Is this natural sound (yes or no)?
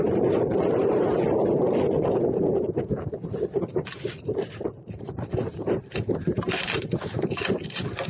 no